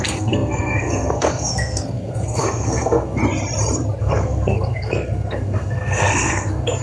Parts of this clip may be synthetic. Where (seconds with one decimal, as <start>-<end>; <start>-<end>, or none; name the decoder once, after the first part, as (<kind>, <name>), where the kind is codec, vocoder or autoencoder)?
0.0-3.2 (codec, SNAC); 4.0-6.8